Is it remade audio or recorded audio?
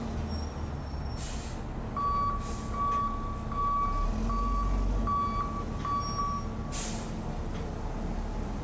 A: recorded